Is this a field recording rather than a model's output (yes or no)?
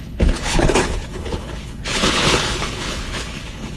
no